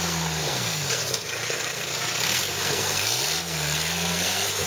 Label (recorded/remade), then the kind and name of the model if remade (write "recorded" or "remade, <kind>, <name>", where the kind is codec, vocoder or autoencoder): remade, codec, SNAC